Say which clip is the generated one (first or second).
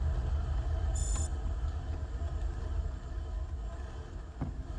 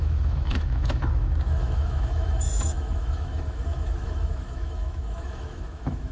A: second